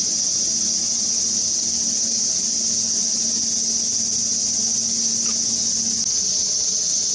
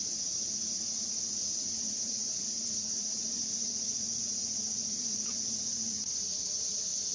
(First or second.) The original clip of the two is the first